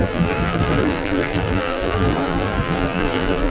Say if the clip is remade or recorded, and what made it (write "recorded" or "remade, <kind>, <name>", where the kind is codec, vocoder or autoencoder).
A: remade, vocoder, BigVGAN v2